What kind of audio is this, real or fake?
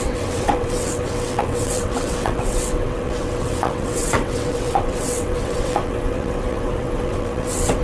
fake